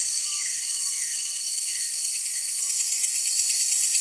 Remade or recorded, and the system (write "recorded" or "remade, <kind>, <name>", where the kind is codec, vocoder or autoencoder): remade, codec, SNAC